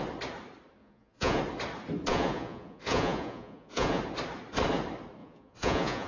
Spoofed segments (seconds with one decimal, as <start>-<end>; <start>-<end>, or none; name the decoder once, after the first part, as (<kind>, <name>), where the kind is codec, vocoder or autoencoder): 0.8-1.4 (vocoder, Vocos); 2.1-4.0; 5.2-6.1